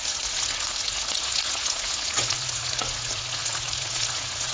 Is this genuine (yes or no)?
no